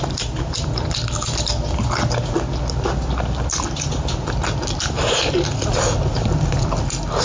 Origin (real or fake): real